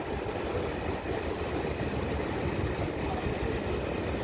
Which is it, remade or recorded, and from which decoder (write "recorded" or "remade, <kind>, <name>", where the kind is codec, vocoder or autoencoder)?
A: recorded